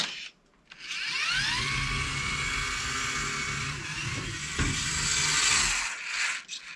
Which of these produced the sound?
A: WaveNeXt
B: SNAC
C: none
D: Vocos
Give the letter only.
C